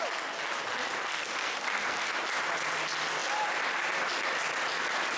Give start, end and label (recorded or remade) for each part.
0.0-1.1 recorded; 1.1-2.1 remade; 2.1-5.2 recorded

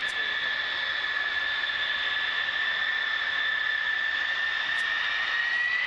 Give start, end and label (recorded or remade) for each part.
0.0-5.9 recorded

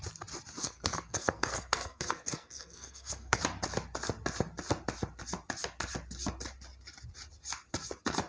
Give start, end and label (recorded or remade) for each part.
0.0-0.6 recorded; 0.6-3.4 remade; 3.4-8.3 recorded

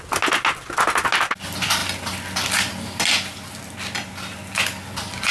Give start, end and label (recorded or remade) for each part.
0.0-5.3 recorded

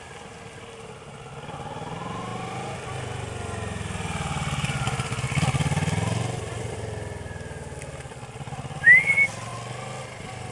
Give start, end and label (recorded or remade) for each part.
0.0-10.5 recorded

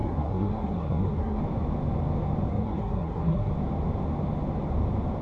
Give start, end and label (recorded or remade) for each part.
0.0-1.4 remade; 1.4-2.5 recorded; 2.5-3.5 remade; 3.5-5.2 recorded

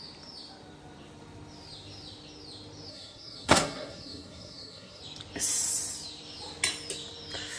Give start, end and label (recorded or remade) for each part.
0.0-2.9 recorded; 2.9-5.0 remade; 5.0-7.6 recorded